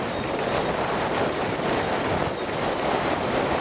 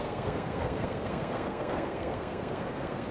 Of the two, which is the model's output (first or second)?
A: second